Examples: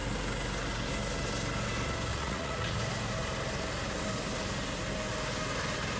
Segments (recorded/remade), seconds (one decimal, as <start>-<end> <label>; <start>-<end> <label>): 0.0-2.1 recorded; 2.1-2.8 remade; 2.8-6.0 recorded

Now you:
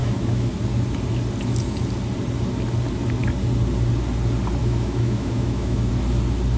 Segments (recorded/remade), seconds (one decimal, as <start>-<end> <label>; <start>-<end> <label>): 0.0-0.5 remade; 0.5-4.6 recorded; 4.6-5.9 remade; 5.9-6.6 recorded

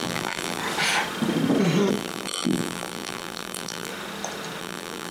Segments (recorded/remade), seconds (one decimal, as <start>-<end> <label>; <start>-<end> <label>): 0.0-0.6 remade; 0.6-1.9 recorded; 1.9-3.9 remade; 3.9-4.6 recorded; 4.6-5.1 remade

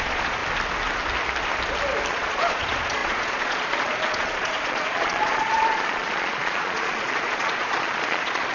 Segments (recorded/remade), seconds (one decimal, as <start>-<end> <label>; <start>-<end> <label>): 0.0-0.4 remade; 0.4-2.1 recorded; 2.1-8.5 remade

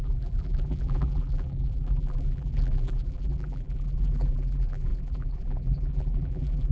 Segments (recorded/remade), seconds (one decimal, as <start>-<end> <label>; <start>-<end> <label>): 0.0-6.7 remade

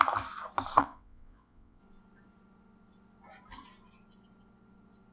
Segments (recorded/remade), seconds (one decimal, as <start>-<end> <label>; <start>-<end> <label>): 0.0-0.8 recorded; 0.8-1.8 remade; 1.8-5.1 recorded

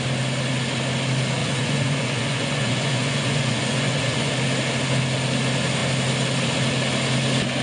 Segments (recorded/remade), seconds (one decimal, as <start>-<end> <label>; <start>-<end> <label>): 0.0-1.4 recorded; 1.4-4.3 remade; 4.3-7.6 recorded

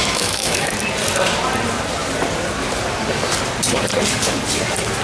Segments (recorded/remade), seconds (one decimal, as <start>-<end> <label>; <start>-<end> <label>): 0.0-0.7 remade; 0.7-5.0 recorded